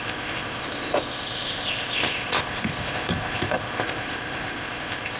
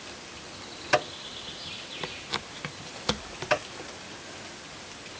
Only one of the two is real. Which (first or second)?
second